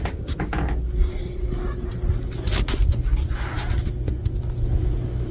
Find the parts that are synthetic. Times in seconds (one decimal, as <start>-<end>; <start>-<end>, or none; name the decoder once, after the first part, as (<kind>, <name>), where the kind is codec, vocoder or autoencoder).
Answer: none